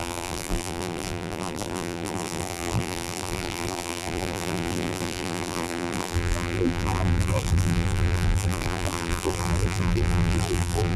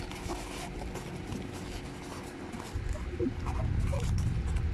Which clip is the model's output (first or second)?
first